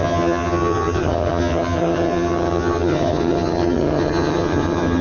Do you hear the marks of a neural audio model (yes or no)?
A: yes